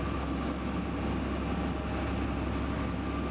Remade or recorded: recorded